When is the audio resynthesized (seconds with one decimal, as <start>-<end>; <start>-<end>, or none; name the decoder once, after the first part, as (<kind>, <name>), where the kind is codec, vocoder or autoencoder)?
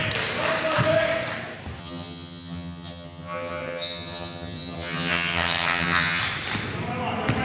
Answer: 1.8-6.2 (vocoder, HiFi-GAN)